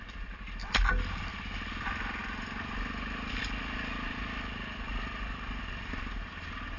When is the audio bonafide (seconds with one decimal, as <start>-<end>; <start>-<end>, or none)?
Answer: 0.0-6.8